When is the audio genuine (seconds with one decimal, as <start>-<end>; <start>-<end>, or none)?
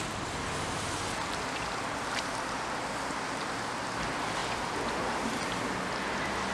0.0-6.5